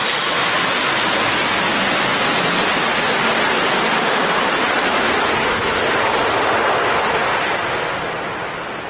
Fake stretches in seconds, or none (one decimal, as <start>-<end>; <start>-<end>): none